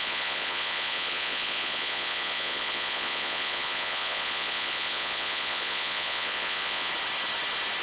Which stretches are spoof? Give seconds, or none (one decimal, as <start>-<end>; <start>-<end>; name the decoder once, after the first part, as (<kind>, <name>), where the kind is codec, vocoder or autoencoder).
0.0-6.9 (vocoder, Vocos)